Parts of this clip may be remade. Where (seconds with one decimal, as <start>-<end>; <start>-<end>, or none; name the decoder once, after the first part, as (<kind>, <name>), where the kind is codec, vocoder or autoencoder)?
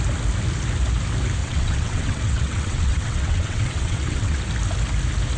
1.4-4.4 (vocoder, WaveNeXt)